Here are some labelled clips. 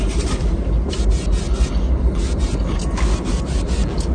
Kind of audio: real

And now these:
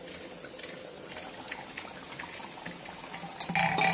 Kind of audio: real